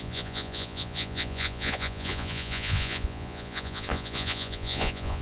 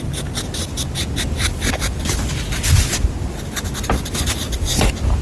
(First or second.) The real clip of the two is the second